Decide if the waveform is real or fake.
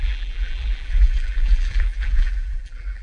fake